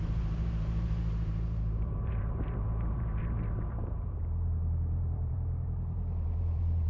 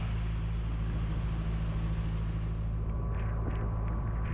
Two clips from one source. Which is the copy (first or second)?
first